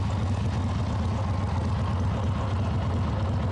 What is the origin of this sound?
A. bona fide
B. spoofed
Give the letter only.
A